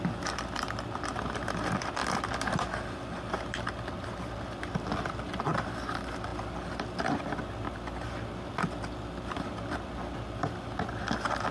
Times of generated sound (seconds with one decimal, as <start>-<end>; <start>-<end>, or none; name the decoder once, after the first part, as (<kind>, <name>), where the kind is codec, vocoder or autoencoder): none